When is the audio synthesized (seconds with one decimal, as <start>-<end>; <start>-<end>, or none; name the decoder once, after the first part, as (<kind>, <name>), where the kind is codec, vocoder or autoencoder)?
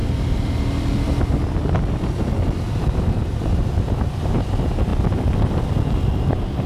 3.2-4.4 (vocoder, BigVGAN v2)